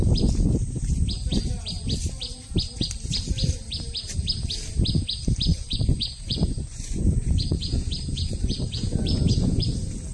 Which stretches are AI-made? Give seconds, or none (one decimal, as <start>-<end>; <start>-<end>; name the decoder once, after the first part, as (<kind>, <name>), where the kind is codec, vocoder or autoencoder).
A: 5.5-9.6 (vocoder, Vocos)